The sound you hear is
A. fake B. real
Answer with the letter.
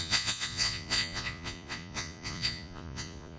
A